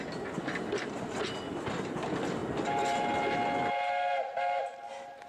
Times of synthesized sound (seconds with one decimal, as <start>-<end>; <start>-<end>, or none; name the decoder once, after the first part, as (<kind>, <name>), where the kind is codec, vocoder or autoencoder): none